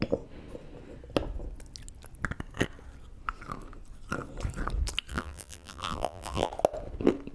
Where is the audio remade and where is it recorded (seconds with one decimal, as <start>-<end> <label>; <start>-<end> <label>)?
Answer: 0.0-5.1 recorded; 5.1-6.5 remade; 6.5-7.3 recorded